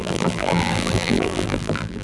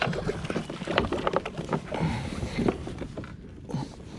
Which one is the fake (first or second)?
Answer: first